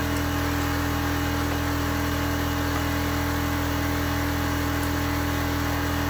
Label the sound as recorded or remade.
recorded